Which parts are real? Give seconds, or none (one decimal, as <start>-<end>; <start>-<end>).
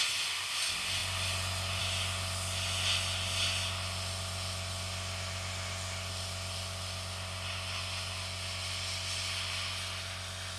0.0-10.6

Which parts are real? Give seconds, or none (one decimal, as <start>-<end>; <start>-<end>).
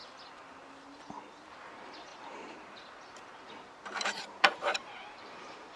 0.0-1.3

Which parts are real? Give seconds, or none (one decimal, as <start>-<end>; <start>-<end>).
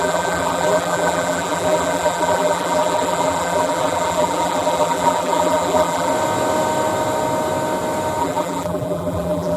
6.1-8.2